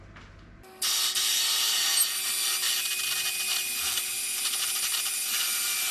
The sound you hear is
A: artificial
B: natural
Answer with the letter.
B